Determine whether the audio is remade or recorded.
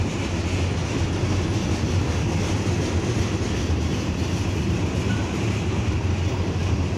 recorded